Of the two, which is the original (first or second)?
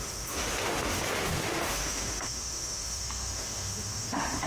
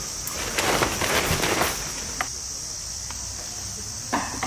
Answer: second